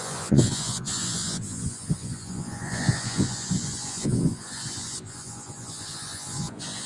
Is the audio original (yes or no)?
no